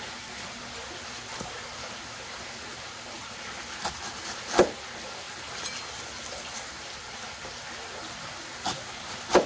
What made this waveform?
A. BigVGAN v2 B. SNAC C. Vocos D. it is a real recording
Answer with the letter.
D